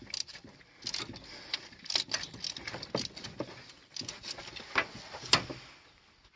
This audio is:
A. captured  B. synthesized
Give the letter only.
A